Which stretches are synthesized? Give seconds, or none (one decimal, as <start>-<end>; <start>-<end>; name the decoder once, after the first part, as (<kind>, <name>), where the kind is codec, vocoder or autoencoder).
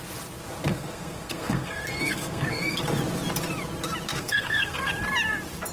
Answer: 0.7-2.8 (codec, SNAC); 4.1-4.9